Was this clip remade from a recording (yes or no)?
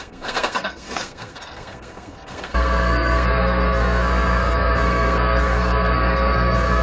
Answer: yes